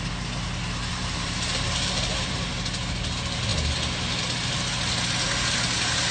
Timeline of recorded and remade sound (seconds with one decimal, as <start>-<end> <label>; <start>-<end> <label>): 0.0-0.9 recorded; 0.9-2.5 remade; 2.5-6.1 recorded